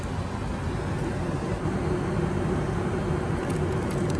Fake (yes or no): no